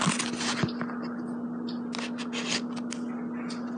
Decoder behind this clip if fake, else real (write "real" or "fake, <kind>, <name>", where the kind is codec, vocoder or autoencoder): real